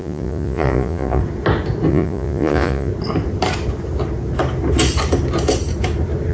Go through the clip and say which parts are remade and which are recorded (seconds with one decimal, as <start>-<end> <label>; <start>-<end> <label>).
0.0-1.2 remade; 1.2-1.9 recorded; 1.9-2.9 remade; 2.9-6.3 recorded